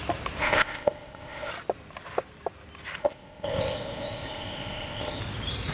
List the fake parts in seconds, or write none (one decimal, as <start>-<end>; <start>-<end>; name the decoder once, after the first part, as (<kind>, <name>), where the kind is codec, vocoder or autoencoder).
0.4-1.5 (codec, ZipCodec); 3.0-5.2